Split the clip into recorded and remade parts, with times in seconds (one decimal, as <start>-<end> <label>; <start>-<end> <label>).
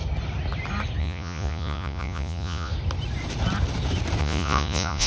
0.0-1.0 recorded; 1.0-2.7 remade; 2.7-4.2 recorded; 4.2-5.1 remade